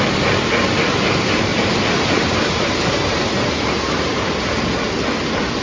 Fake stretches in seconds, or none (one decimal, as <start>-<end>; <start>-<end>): 1.5-4.8